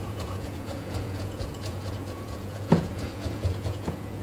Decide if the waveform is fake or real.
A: fake